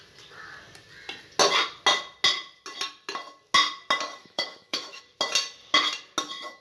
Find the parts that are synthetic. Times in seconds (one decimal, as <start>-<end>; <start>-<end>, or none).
4.2-5.0